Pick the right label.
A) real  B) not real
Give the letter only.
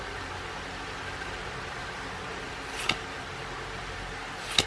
B